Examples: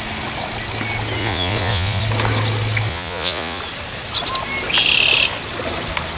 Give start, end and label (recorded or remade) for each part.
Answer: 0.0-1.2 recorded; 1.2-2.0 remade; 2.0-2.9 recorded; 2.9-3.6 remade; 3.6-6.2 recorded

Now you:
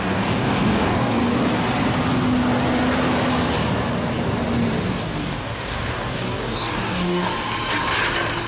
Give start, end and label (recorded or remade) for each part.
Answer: 0.0-1.2 remade; 1.2-4.9 recorded; 4.9-7.3 remade; 7.3-8.5 recorded